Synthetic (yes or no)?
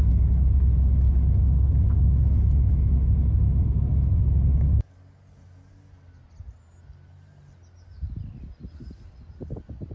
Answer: no